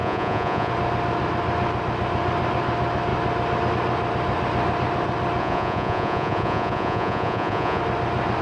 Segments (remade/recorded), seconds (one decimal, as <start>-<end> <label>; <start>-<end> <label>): 0.0-0.7 remade; 0.7-5.4 recorded; 5.4-7.8 remade; 7.8-8.4 recorded

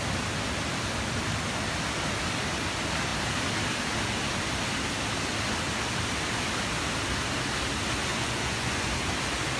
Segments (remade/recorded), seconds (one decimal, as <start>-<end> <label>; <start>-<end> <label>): 0.0-8.1 recorded; 8.1-8.9 remade; 8.9-9.6 recorded

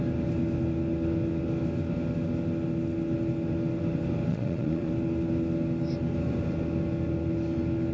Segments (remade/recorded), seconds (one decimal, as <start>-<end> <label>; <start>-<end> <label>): 0.0-4.3 recorded; 4.3-4.9 remade; 4.9-7.9 recorded